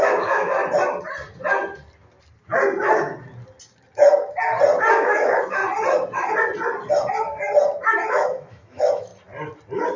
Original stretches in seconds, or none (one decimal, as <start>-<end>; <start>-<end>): 0.6-4.9; 5.6-8.1; 9.1-10.0